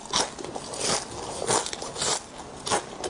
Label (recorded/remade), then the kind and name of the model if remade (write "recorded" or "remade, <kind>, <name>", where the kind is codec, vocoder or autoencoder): recorded